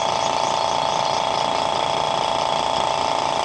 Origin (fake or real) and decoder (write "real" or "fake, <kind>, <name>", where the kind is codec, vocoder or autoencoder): real